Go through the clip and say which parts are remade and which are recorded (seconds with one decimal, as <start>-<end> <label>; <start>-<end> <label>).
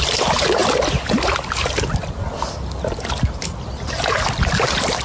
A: 0.0-5.0 recorded